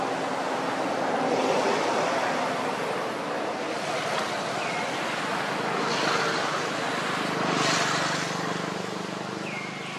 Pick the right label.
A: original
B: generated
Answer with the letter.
A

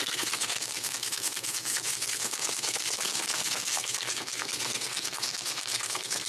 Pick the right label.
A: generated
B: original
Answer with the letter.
A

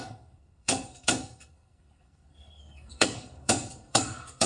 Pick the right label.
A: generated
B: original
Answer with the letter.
A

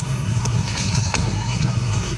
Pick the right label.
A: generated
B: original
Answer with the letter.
A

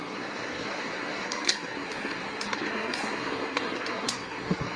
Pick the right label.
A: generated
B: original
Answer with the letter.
A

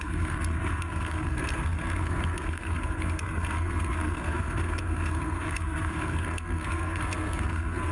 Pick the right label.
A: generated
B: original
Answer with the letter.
A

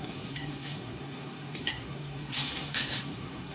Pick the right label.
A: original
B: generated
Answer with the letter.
B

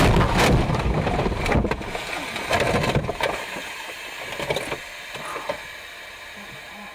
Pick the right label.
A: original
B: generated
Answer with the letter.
A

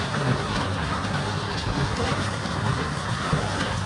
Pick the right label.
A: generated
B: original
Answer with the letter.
A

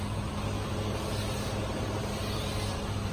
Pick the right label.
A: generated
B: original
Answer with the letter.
B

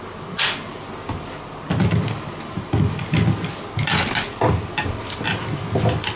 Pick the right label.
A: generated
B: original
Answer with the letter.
B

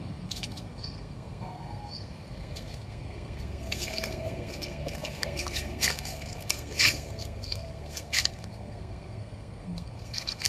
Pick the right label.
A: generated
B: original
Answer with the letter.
A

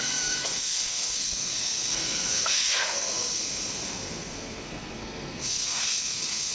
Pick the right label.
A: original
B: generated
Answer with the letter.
B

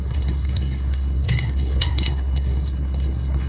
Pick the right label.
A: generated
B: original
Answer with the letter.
A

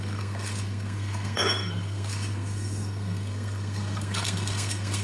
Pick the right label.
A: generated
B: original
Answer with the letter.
A